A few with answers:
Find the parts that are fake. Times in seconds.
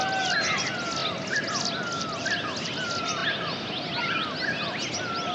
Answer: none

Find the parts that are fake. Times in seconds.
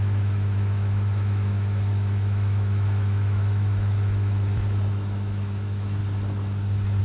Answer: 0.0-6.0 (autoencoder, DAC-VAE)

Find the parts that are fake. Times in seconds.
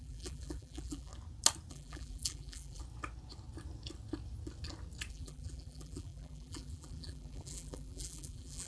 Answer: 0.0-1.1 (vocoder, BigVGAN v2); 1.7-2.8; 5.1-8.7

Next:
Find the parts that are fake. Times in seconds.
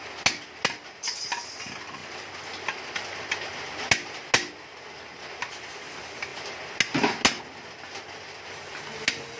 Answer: none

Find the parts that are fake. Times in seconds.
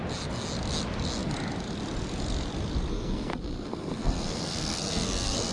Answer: 2.9-5.5 (codec, SNAC)